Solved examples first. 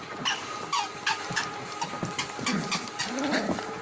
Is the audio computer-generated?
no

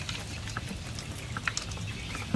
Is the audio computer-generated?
no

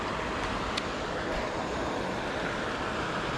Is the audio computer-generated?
no